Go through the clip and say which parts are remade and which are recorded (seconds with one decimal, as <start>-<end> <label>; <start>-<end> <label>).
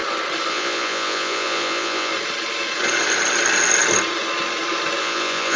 0.0-0.5 recorded; 0.5-2.1 remade; 2.1-5.0 recorded; 5.0-5.6 remade